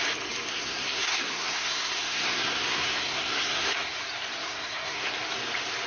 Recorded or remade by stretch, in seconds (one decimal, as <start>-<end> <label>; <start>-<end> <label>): 0.0-0.5 recorded; 0.5-4.0 remade; 4.0-4.4 recorded; 4.4-5.1 remade; 5.1-5.9 recorded